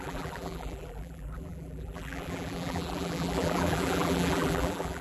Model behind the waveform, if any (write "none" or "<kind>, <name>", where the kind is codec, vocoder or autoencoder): vocoder, BigVGAN v2